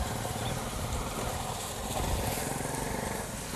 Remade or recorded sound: recorded